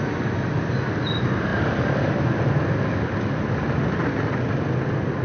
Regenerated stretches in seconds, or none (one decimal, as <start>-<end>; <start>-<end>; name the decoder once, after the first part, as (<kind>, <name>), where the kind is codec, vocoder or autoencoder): none